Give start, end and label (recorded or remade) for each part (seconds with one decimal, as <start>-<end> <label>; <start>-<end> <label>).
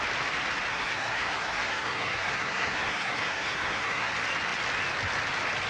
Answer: 0.0-0.7 recorded; 0.7-4.1 remade; 4.1-5.7 recorded